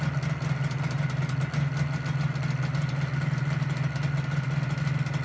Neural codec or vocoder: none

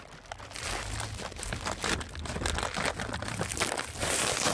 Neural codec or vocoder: none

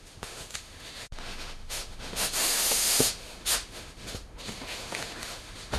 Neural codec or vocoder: autoencoder, DAC-VAE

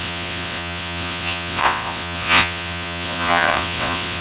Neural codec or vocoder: vocoder, WaveNeXt